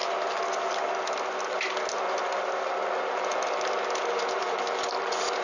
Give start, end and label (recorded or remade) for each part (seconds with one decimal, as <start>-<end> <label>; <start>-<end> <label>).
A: 0.0-5.4 recorded